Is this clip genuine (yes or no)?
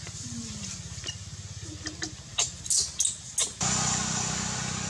yes